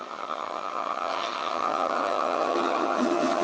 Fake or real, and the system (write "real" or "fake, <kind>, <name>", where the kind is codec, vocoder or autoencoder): fake, vocoder, HiFi-GAN